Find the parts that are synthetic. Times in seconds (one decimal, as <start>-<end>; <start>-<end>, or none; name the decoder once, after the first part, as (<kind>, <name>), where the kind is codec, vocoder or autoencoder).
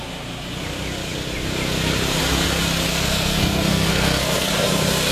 2.9-4.5 (codec, SNAC)